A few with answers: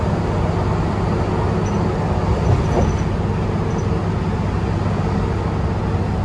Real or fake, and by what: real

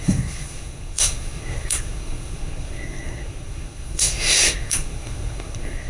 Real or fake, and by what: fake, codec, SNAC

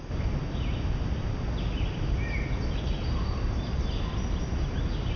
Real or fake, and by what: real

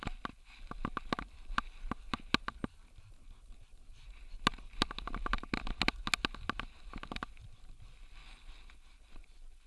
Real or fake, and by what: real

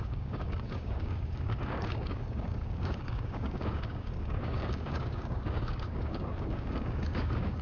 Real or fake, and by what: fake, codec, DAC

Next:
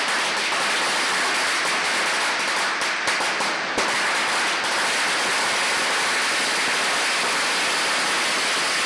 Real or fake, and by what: real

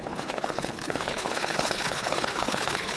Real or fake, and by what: fake, codec, HILCodec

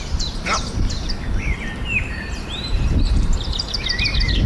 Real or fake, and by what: fake, vocoder, BigVGAN v2